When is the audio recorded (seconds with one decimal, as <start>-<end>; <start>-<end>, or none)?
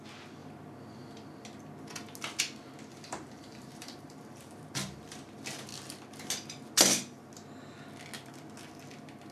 0.0-2.9; 4.6-9.3